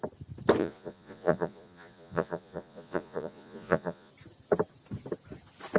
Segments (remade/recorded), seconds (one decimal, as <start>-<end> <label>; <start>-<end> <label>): 0.0-0.6 recorded; 0.6-4.1 remade; 4.1-5.8 recorded